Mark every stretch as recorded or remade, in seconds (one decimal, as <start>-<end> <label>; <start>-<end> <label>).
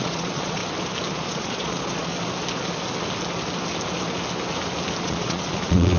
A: 0.0-0.6 remade; 0.6-1.1 recorded; 1.1-2.1 remade; 2.1-5.0 recorded; 5.0-6.0 remade